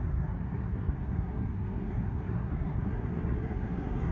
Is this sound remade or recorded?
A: remade